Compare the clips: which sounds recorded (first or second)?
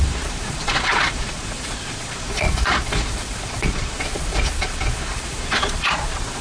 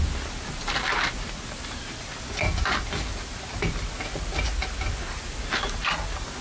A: second